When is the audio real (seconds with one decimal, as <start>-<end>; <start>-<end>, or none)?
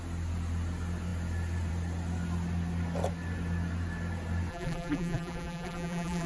0.0-4.5